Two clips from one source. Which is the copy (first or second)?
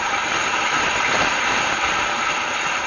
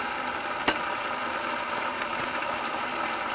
first